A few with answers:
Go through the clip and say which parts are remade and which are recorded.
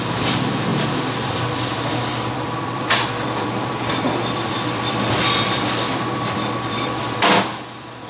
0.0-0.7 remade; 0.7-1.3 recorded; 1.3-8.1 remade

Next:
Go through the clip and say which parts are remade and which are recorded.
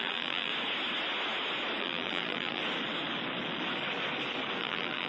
0.0-0.5 remade; 0.5-1.8 recorded; 1.8-2.6 remade; 2.6-4.6 recorded; 4.6-5.1 remade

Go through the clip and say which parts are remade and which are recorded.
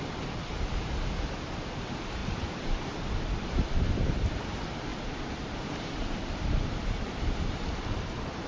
0.0-2.2 recorded; 2.2-4.5 remade; 4.5-4.9 recorded; 4.9-7.2 remade; 7.2-8.5 recorded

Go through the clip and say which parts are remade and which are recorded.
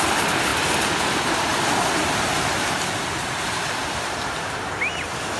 0.0-1.5 recorded; 1.5-4.7 remade; 4.7-5.4 recorded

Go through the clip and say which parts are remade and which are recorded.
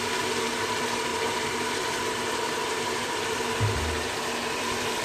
0.0-5.0 recorded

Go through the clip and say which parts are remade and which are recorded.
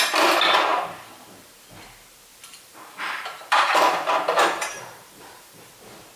0.0-0.7 recorded; 0.7-1.6 remade; 1.6-2.3 recorded; 2.3-5.7 remade; 5.7-6.2 recorded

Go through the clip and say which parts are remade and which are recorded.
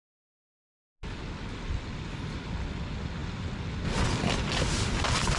0.0-5.4 recorded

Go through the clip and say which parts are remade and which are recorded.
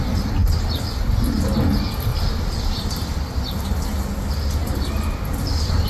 0.0-2.1 recorded; 2.1-3.0 remade; 3.0-4.6 recorded; 4.6-5.9 remade